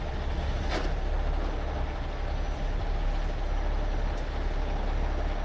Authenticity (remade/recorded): recorded